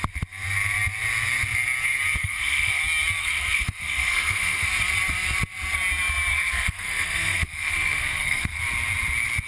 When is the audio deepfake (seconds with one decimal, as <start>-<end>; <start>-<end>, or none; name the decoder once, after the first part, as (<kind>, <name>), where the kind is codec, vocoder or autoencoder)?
2.2-2.8 (codec, SNAC); 3.2-4.7; 6.3-8.6